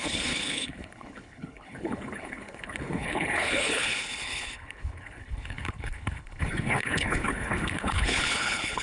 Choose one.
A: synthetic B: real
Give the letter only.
A